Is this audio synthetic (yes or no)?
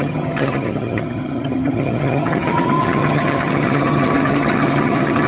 yes